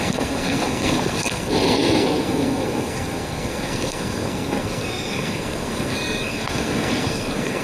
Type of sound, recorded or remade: remade